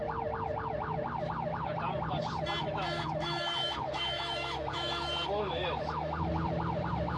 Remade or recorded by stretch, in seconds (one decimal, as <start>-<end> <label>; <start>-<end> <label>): 0.0-2.6 recorded; 2.6-6.3 remade; 6.3-7.2 recorded